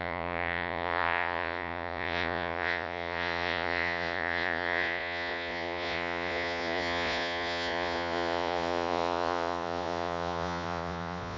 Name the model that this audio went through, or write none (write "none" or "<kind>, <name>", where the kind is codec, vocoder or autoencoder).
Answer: vocoder, Vocos